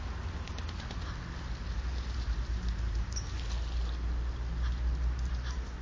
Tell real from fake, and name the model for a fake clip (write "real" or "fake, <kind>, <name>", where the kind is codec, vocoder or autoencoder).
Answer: real